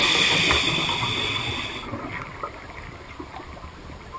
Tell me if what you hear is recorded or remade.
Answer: recorded